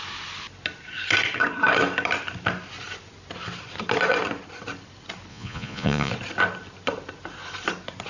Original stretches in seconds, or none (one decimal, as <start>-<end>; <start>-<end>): 0.0-5.3; 6.1-8.1